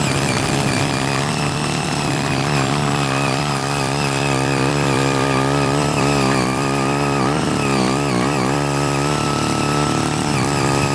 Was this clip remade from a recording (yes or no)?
yes